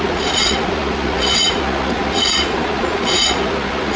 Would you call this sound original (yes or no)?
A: no